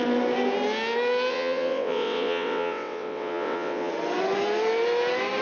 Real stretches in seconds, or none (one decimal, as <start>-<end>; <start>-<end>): 0.0-1.3; 3.9-5.4